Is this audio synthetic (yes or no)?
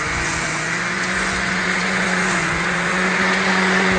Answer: yes